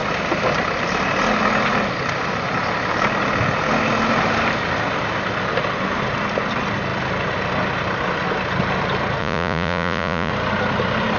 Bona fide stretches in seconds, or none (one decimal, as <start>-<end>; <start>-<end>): 0.0-9.2; 10.3-11.2